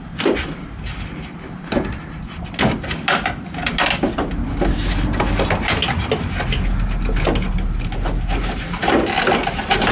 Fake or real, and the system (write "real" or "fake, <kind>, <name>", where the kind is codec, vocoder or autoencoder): real